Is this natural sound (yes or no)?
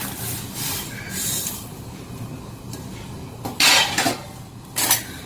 yes